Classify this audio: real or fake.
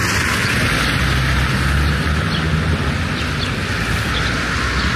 real